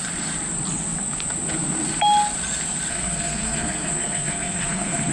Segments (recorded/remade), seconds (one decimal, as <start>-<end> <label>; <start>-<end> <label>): 0.0-2.9 recorded; 2.9-5.1 remade